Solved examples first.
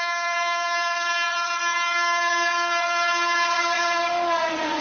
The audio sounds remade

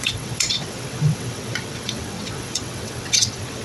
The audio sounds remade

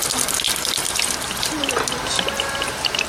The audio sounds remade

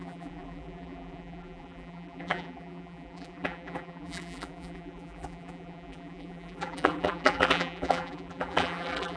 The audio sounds remade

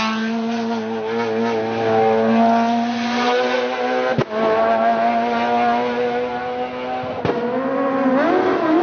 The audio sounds recorded